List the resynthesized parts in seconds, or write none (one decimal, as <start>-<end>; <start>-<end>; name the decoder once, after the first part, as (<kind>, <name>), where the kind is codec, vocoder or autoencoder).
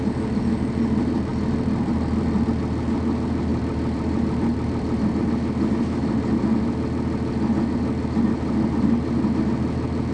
1.3-2.6 (vocoder, BigVGAN v2); 3.5-5.2